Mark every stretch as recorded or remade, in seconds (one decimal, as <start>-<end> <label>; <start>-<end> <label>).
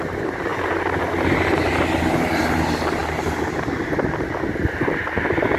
0.0-0.5 recorded; 0.5-1.0 remade; 1.0-5.6 recorded